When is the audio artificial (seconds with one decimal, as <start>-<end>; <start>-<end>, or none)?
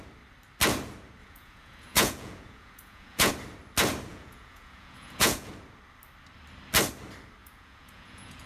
1.2-3.3; 4.1-5.5; 7.4-8.5